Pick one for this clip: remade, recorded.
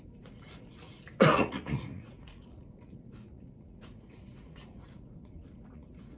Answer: remade